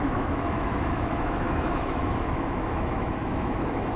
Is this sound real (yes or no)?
no